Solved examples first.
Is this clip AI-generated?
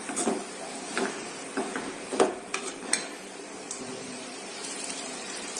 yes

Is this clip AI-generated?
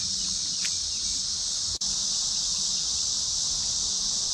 no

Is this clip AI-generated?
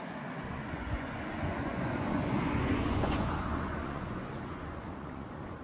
yes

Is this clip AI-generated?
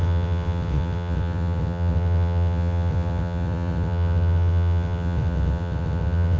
yes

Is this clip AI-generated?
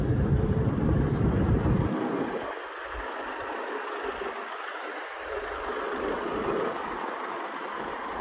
no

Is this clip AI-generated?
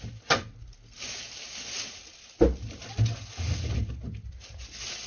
no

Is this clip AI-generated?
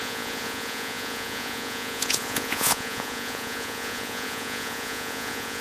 yes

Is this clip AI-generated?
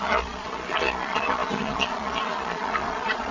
yes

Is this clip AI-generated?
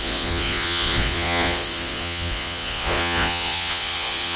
yes